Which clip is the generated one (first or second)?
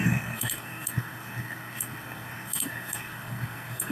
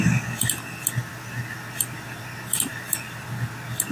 first